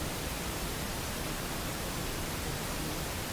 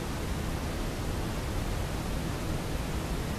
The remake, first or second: first